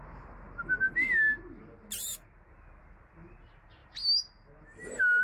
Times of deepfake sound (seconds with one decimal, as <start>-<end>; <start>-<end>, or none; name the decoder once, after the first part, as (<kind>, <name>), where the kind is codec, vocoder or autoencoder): none

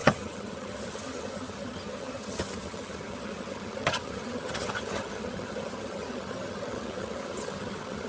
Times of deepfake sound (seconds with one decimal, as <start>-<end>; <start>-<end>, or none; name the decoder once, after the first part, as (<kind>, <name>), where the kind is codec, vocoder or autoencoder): 0.0-8.1 (vocoder, HiFi-GAN)